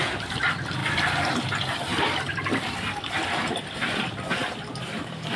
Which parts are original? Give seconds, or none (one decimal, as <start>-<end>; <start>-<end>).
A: 0.0-0.8; 1.5-5.4